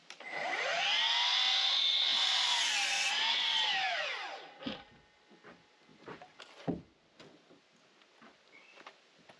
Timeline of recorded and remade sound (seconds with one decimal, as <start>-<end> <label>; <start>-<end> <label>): 0.0-0.8 remade; 0.8-2.1 recorded; 2.1-4.9 remade; 4.9-5.9 recorded; 5.9-6.4 remade; 6.4-9.4 recorded